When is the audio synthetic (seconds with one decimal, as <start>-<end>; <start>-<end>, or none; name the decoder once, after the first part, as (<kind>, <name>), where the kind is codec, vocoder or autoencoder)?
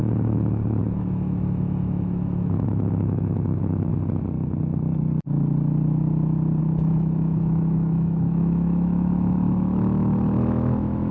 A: 0.8-3.9 (autoencoder, DAC-VAE); 6.6-11.1